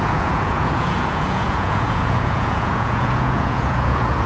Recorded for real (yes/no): no